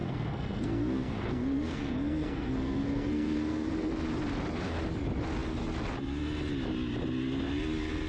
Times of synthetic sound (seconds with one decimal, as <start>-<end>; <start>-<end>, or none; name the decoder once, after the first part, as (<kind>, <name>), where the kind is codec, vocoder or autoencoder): 0.0-3.7 (codec, SNAC)